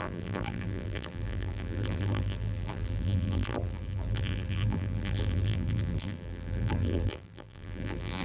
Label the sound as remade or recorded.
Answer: remade